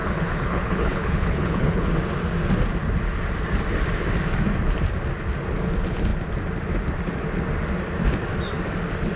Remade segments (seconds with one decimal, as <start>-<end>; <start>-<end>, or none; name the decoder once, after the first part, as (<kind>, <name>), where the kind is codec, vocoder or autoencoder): 0.0-1.9 (codec, HILCodec)